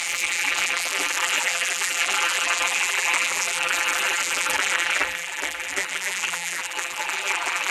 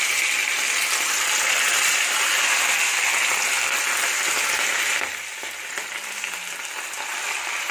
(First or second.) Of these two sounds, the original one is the second